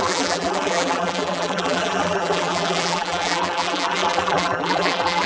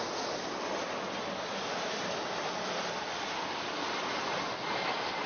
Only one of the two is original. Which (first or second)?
second